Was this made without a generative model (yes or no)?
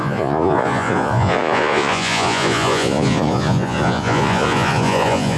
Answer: no